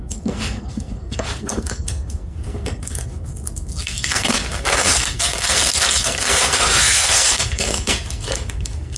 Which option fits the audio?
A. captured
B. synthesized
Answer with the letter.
B